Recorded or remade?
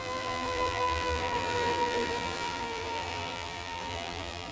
remade